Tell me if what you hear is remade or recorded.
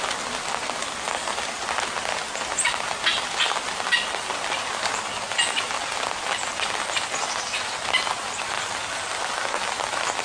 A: recorded